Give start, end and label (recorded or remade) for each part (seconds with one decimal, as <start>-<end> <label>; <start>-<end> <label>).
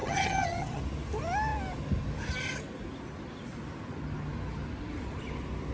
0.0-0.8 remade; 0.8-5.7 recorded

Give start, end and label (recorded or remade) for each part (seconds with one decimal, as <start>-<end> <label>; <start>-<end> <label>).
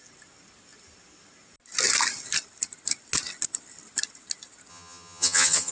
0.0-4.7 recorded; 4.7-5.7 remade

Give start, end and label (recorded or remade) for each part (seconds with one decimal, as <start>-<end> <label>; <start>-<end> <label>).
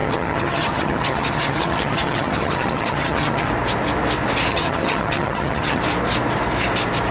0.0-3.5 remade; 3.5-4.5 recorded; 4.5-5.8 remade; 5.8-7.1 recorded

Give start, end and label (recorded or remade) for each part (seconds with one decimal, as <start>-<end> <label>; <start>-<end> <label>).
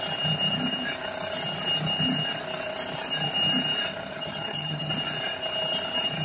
0.0-3.9 recorded; 3.9-4.9 remade; 4.9-6.2 recorded